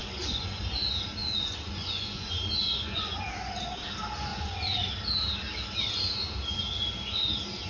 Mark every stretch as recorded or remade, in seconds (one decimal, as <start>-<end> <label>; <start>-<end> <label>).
0.0-0.6 remade; 0.6-1.2 recorded; 1.2-3.3 remade; 3.3-4.3 recorded; 4.3-4.9 remade; 4.9-7.7 recorded